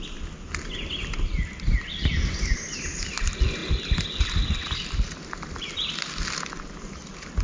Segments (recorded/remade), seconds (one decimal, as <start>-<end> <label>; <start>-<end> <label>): 0.0-7.4 recorded